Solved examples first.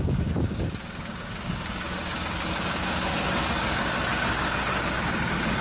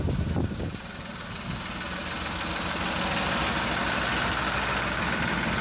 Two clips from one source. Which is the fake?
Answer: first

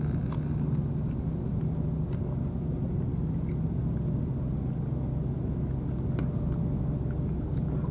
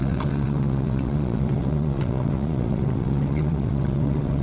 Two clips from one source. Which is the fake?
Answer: second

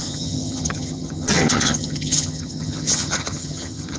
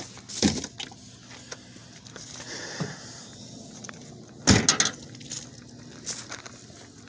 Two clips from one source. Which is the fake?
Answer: first